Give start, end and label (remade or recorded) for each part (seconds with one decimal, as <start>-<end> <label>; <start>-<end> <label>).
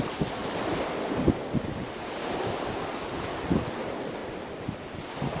0.0-0.4 recorded; 0.4-3.6 remade; 3.6-4.2 recorded; 4.2-4.8 remade; 4.8-5.4 recorded